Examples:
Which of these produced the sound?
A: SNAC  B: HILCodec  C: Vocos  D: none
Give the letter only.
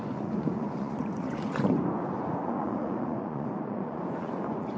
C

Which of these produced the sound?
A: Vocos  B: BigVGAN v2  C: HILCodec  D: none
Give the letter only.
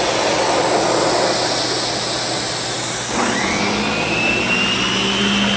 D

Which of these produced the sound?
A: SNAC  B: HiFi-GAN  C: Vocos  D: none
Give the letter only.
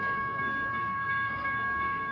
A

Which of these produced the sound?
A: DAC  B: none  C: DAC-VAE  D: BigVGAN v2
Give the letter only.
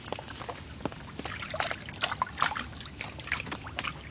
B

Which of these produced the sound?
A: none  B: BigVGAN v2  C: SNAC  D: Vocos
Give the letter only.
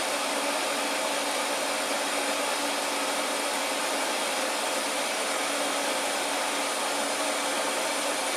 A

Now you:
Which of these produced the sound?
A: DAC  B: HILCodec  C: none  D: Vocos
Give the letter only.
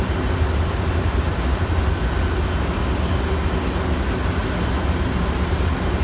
C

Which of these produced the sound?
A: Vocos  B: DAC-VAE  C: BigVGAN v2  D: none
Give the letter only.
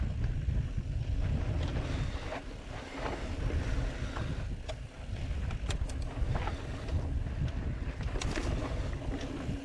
D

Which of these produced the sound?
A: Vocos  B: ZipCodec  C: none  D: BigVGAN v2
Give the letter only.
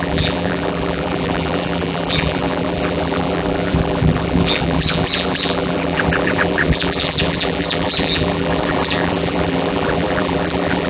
D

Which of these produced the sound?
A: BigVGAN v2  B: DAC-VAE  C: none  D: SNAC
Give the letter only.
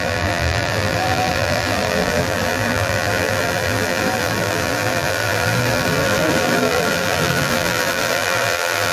A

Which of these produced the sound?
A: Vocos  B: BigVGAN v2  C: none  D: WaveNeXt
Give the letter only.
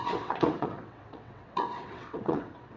D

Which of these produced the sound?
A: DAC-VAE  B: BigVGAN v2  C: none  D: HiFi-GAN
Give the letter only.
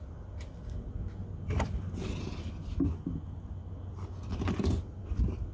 C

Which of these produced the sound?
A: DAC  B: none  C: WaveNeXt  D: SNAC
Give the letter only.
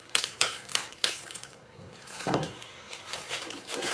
D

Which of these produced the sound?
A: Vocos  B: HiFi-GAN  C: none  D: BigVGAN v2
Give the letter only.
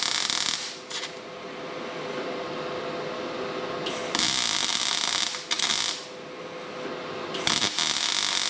C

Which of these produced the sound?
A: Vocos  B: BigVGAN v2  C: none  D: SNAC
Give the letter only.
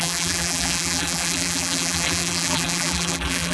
B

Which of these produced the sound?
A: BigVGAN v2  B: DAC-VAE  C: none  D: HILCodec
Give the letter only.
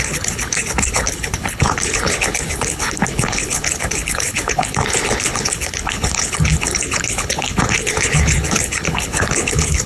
D